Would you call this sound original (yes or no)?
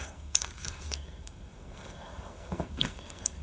no